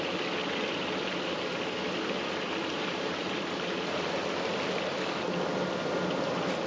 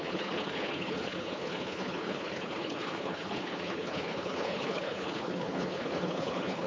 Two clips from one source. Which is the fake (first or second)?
second